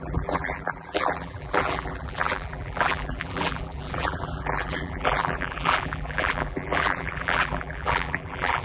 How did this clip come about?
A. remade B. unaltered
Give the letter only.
A